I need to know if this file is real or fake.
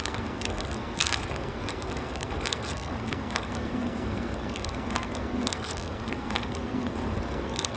fake